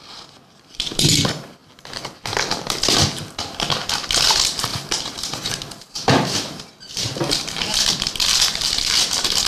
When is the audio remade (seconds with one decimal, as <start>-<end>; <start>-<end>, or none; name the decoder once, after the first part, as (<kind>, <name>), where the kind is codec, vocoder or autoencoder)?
1.6-3.9 (vocoder, BigVGAN v2)